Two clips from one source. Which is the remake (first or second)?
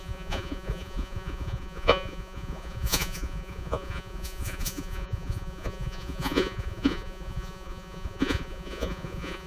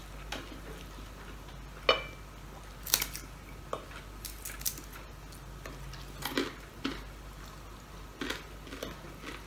first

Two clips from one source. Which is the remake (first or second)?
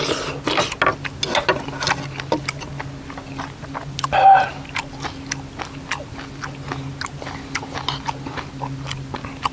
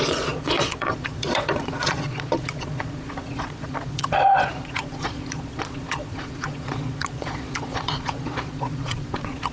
second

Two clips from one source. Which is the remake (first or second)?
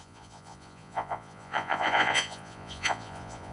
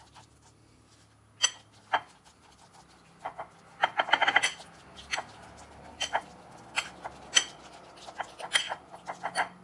first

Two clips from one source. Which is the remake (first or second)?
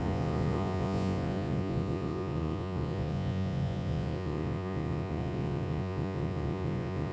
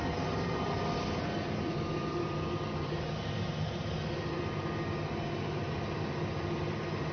first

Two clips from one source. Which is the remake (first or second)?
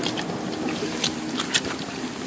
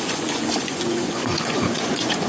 second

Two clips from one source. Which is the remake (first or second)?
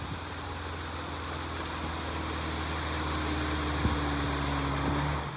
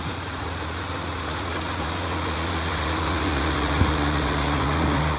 second